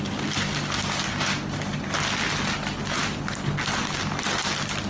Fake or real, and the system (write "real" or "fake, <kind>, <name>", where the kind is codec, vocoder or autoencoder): real